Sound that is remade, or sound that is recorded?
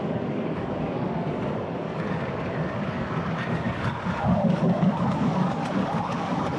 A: remade